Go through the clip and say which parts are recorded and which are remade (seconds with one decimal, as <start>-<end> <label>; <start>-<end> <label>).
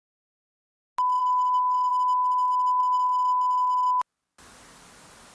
0.0-1.2 recorded; 1.2-1.9 remade; 1.9-5.3 recorded